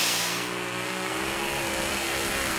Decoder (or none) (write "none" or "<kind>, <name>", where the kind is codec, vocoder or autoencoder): codec, SNAC